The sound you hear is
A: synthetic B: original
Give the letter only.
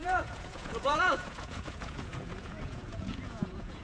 A